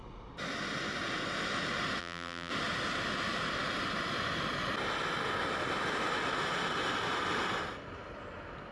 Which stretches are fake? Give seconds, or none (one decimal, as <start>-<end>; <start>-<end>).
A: 2.0-2.5